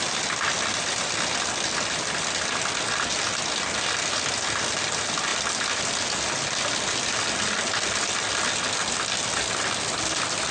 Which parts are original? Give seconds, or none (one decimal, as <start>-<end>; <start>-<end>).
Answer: 0.0-10.5